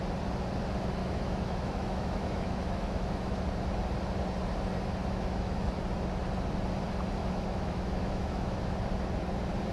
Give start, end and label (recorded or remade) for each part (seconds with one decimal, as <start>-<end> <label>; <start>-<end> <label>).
0.0-1.0 recorded; 1.0-3.4 remade; 3.4-5.0 recorded; 5.0-5.7 remade; 5.7-7.2 recorded; 7.2-8.6 remade; 8.6-9.7 recorded